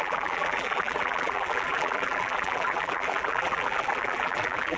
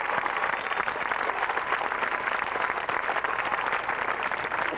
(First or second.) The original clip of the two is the second